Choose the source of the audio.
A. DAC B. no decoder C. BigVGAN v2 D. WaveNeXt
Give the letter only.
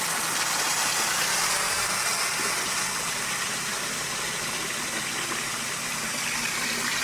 B